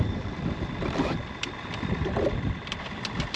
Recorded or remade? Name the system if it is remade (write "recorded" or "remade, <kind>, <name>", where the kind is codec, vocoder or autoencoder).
remade, vocoder, BigVGAN v2